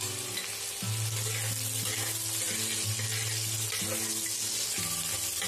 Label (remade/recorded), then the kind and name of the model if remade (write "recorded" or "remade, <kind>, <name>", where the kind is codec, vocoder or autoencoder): recorded